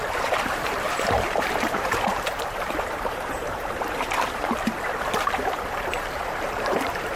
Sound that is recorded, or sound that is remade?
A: remade